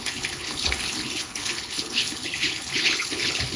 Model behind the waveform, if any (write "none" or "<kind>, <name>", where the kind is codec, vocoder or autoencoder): codec, HILCodec